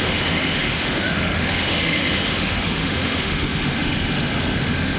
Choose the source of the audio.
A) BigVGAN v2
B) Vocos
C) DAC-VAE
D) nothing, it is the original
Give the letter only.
C